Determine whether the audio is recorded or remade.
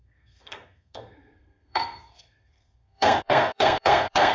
remade